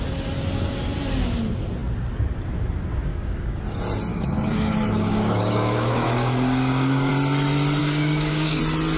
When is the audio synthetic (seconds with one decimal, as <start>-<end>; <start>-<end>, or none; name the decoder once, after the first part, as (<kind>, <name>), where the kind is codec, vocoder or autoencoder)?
3.1-3.6 (codec, DAC); 4.1-7.1; 7.8-8.6